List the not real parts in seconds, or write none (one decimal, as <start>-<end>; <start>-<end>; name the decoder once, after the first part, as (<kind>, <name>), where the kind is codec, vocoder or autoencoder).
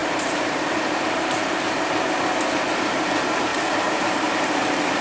0.0-1.9 (vocoder, BigVGAN v2); 3.5-4.3